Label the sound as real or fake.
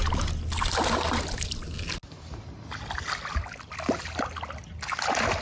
real